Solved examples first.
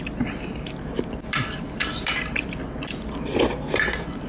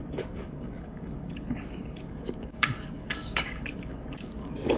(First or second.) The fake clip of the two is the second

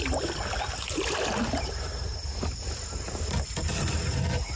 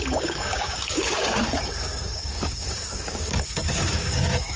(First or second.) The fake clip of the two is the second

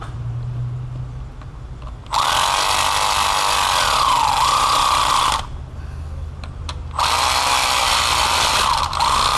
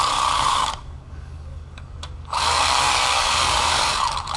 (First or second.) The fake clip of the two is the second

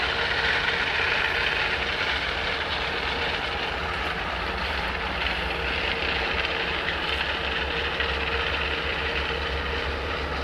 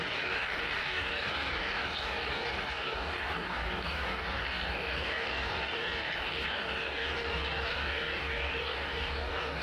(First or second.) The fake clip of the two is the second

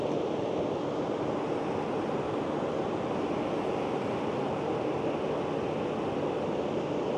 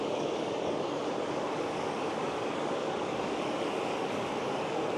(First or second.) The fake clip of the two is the second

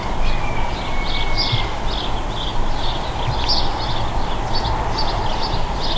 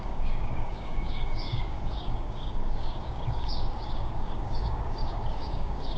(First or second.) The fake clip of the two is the second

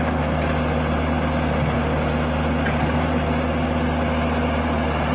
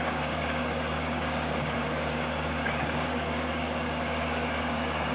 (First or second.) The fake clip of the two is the second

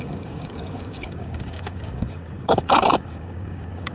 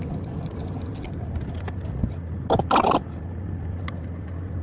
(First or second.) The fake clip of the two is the first